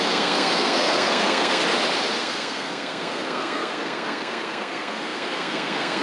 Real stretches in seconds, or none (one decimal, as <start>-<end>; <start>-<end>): 1.6-2.2